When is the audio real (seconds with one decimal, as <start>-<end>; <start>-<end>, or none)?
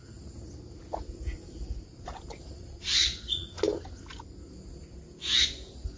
0.0-2.6; 3.5-6.0